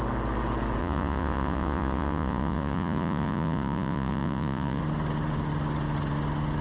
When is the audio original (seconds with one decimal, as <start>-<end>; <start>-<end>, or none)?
0.0-0.8; 4.8-6.6